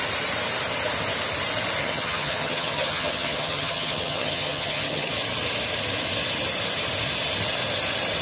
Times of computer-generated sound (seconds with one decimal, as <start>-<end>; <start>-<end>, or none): 1.8-5.1